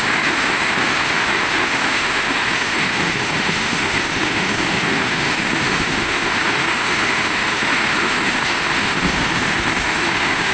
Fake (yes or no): yes